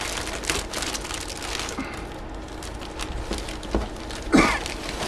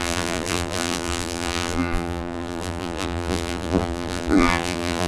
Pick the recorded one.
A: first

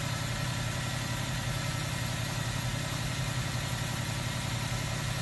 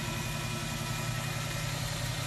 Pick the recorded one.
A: second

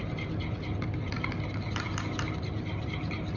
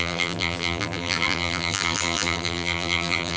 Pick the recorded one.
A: first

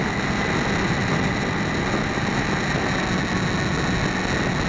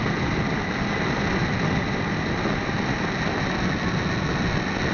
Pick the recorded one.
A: first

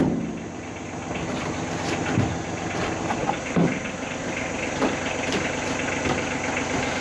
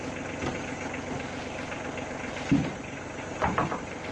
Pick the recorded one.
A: first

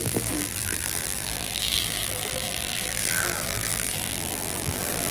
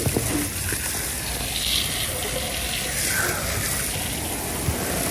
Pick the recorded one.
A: second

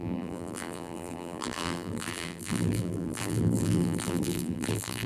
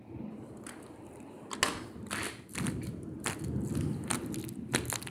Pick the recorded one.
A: second